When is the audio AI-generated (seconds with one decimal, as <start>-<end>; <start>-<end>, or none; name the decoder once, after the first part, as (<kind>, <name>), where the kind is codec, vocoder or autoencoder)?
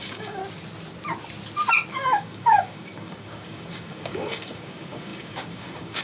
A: 0.0-0.4 (codec, DAC); 1.9-6.0